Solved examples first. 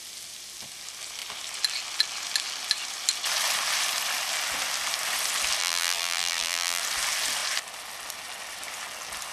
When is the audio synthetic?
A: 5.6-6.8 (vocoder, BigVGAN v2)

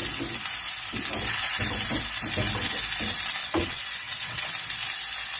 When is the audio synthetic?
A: 3.4-4.5 (vocoder, WaveNeXt)

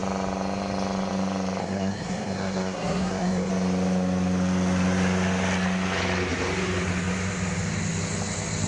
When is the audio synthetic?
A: 1.6-3.5 (codec, SNAC)